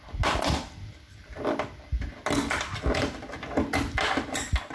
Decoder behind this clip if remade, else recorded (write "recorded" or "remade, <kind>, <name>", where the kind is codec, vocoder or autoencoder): recorded